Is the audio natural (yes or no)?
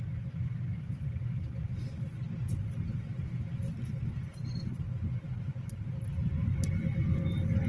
yes